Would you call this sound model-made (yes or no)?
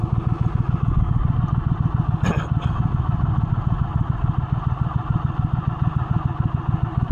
no